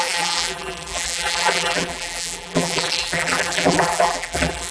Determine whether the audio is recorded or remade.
remade